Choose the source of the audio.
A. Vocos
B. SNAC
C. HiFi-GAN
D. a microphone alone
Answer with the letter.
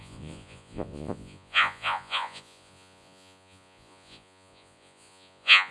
A